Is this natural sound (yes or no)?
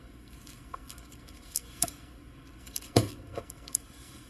no